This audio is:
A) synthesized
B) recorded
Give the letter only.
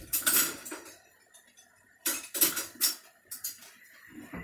A